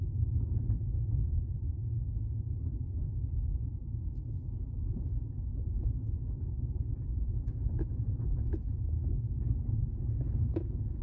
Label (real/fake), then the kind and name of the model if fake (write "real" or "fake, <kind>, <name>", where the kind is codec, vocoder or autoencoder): fake, vocoder, Vocos